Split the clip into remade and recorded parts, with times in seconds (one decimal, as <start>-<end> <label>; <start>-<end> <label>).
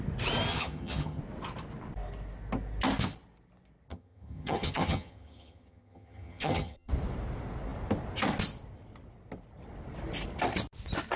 0.0-0.5 recorded; 0.5-1.2 remade; 1.2-3.9 recorded; 3.9-6.9 remade; 6.9-11.2 recorded